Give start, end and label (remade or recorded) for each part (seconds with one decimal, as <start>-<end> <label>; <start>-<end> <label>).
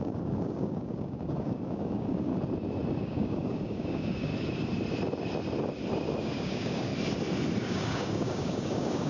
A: 0.0-2.3 remade; 2.3-3.0 recorded; 3.0-4.3 remade; 4.3-6.2 recorded; 6.2-6.9 remade; 6.9-7.6 recorded; 7.6-9.1 remade